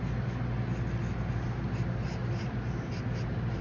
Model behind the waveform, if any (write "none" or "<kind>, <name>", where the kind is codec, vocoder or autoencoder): none